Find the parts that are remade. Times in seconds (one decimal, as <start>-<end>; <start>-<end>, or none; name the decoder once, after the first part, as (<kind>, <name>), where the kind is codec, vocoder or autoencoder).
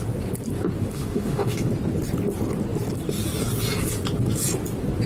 0.9-1.7 (autoencoder, DAC-VAE)